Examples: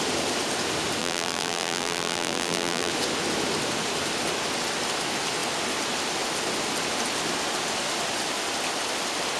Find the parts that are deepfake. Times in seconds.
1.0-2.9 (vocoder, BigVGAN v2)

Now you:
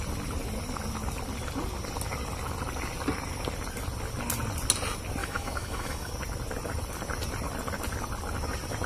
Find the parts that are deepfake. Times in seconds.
5.2-6.1 (autoencoder, DAC-VAE)

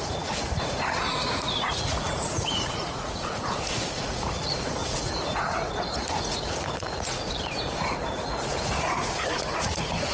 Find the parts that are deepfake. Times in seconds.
0.0-10.1 (vocoder, Vocos)

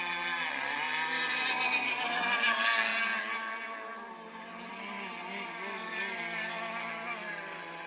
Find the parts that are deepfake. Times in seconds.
none

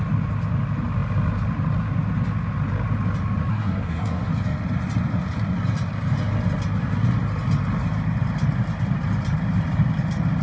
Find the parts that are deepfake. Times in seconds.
3.5-4.3 (codec, SNAC)